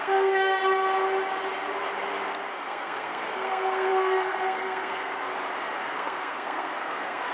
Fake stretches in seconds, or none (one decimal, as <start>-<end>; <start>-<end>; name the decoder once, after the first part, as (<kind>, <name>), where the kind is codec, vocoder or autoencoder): 0.0-0.6 (codec, SNAC); 2.5-5.3; 5.8-7.3